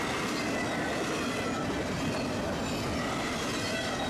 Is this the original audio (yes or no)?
yes